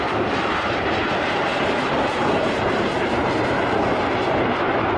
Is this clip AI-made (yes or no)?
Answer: yes